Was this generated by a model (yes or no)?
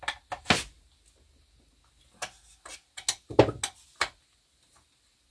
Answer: no